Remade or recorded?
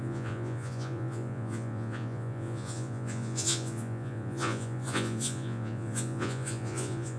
remade